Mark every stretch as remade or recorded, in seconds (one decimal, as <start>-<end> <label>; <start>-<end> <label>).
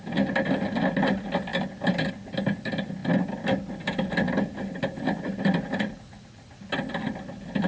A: 0.0-7.7 recorded